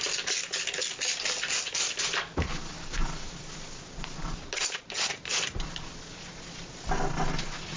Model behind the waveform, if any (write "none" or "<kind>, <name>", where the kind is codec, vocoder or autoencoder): none